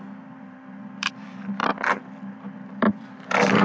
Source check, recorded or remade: remade